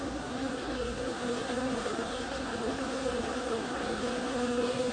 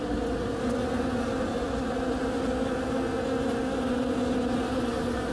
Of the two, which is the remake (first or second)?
first